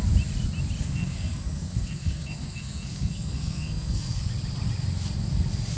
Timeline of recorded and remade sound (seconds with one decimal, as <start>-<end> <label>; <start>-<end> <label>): 0.0-0.8 recorded; 0.8-4.3 remade; 4.3-5.8 recorded